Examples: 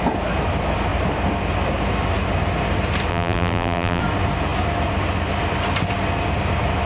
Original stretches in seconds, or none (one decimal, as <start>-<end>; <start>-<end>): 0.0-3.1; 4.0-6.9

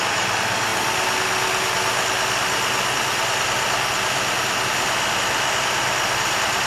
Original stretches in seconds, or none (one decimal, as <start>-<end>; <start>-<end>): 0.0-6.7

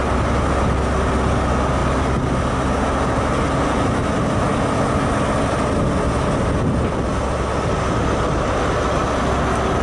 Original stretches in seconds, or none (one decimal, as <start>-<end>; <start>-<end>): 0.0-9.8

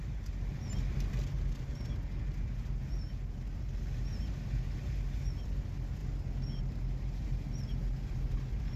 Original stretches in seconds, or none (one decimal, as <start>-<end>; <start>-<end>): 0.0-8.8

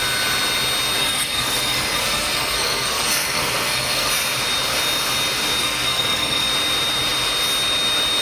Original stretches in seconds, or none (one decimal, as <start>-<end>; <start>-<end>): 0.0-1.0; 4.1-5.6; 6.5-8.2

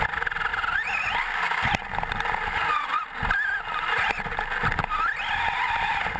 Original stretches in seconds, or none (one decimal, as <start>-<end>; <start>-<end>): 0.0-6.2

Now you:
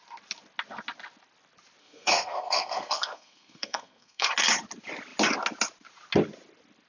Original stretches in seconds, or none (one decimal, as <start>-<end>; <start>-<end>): 0.0-1.8; 4.3-6.9

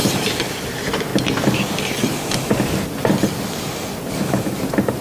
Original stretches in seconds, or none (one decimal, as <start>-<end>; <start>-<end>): 1.1-4.1